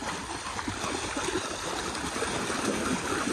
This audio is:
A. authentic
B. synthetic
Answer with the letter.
A